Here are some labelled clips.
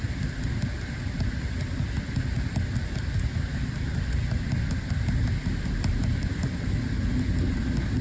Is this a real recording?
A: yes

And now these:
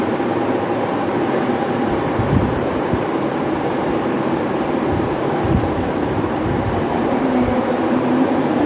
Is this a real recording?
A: no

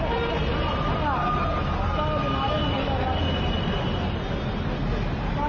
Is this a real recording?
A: yes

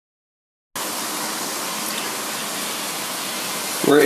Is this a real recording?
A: yes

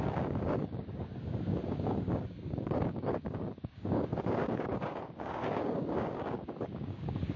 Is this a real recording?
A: no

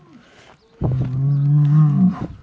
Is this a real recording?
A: yes